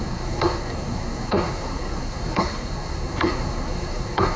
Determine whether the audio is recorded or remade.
remade